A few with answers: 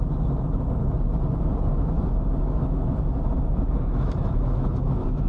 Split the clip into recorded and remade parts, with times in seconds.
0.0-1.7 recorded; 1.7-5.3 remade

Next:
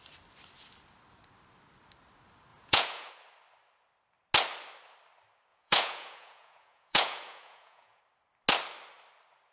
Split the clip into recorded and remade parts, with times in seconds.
0.0-2.5 recorded; 2.5-3.1 remade; 3.1-5.5 recorded; 5.5-8.0 remade; 8.0-9.5 recorded

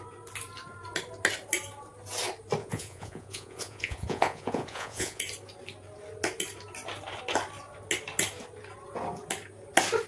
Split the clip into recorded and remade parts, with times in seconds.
0.0-2.6 recorded; 2.6-5.2 remade; 5.2-10.1 recorded